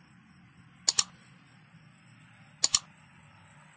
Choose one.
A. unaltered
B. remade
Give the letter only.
A